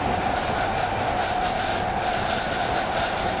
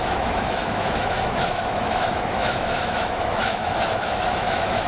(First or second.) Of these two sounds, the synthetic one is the second